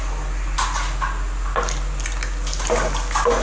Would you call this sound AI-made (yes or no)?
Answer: no